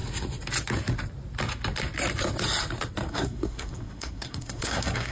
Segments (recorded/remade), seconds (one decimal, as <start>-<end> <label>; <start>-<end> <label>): 0.0-3.1 recorded; 3.1-5.1 remade